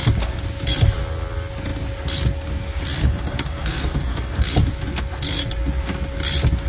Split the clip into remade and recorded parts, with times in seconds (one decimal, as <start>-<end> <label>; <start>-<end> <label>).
0.0-3.0 recorded; 3.0-4.5 remade; 4.5-6.7 recorded